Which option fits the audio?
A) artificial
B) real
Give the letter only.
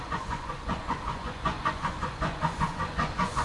A